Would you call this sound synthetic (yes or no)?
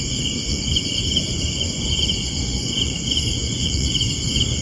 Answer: yes